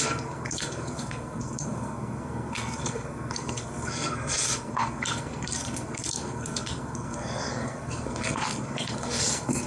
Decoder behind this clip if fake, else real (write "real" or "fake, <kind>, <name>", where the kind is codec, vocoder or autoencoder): fake, codec, SNAC